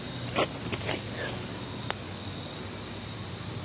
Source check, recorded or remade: recorded